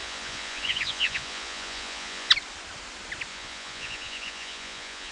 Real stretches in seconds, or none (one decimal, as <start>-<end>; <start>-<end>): 2.3-3.3